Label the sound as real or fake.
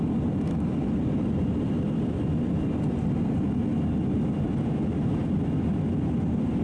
real